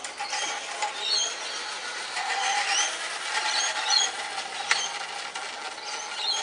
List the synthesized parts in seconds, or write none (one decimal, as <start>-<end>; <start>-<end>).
1.7-4.5